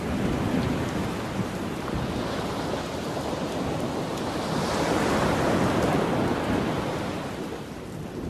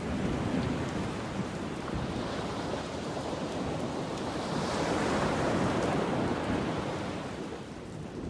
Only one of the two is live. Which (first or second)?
first